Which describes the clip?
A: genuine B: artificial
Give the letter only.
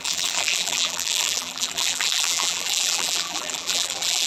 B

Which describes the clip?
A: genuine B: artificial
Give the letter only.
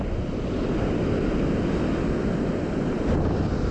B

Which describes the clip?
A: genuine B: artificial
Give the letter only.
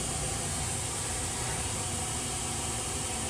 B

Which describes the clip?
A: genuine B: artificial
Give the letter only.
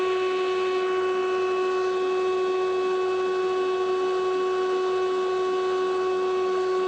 A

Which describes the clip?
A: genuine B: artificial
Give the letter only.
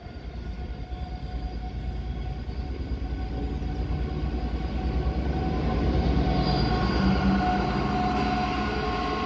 A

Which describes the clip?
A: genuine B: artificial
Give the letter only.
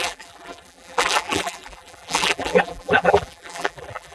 B